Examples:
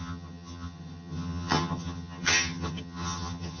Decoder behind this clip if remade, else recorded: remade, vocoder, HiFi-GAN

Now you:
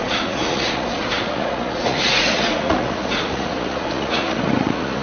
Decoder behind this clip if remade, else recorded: remade, vocoder, Vocos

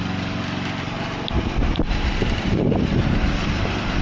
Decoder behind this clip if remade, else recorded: remade, vocoder, BigVGAN v2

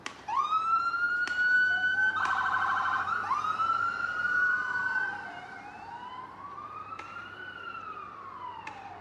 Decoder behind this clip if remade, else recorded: remade, vocoder, BigVGAN v2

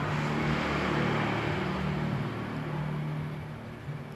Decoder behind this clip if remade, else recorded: recorded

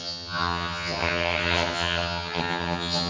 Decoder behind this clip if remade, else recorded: remade, vocoder, HiFi-GAN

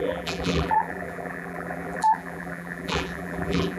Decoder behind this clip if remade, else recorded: remade, vocoder, BigVGAN v2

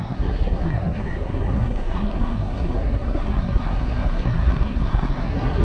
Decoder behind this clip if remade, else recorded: remade, codec, SNAC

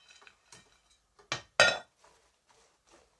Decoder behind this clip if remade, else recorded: recorded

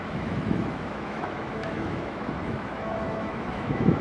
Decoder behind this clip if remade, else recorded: remade, autoencoder, DAC-VAE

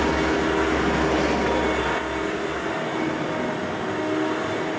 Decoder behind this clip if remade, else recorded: recorded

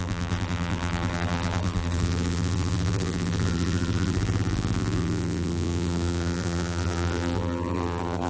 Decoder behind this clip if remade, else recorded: remade, vocoder, BigVGAN v2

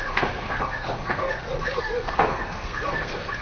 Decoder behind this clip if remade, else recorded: remade, codec, SNAC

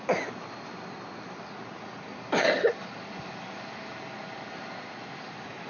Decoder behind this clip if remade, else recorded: recorded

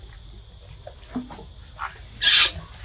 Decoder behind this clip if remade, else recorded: recorded